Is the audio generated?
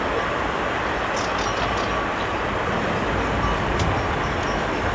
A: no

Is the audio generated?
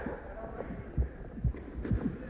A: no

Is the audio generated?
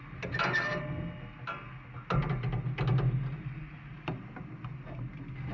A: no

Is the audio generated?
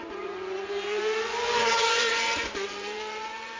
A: yes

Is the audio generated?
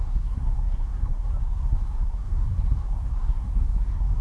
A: yes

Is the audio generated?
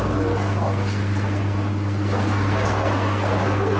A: yes